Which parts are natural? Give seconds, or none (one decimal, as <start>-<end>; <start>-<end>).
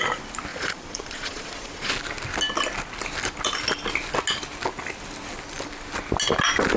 0.0-0.5; 1.9-6.8